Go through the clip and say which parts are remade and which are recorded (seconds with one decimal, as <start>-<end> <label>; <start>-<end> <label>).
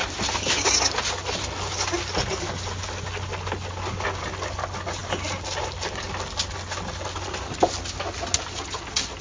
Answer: 0.0-0.7 remade; 0.7-9.2 recorded